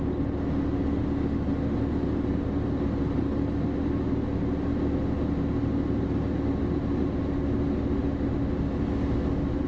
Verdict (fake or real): real